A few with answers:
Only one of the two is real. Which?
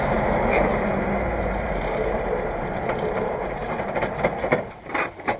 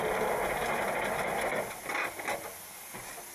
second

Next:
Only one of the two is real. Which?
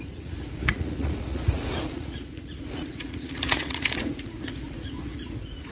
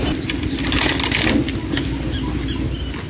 second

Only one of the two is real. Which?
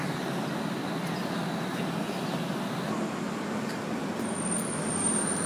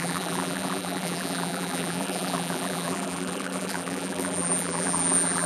first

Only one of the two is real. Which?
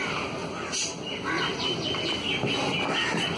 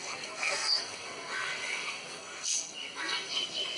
first